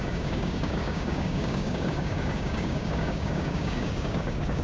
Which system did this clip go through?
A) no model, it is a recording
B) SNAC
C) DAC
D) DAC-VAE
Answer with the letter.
C